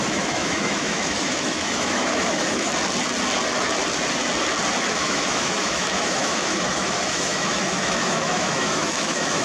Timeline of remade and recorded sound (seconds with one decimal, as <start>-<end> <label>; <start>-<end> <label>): 0.0-2.7 remade; 2.7-4.9 recorded; 4.9-9.4 remade